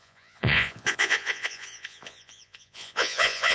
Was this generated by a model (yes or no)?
yes